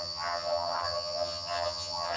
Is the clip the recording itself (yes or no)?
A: no